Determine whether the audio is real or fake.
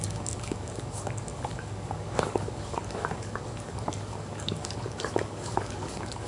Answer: fake